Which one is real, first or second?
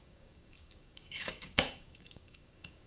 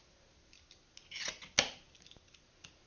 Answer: second